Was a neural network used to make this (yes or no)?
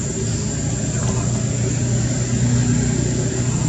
no